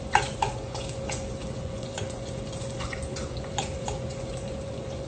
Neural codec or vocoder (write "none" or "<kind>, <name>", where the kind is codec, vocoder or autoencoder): vocoder, Vocos